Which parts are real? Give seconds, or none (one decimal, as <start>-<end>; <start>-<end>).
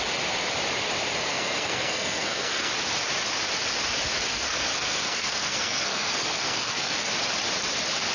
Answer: 0.0-1.3; 2.7-4.3; 7.1-8.1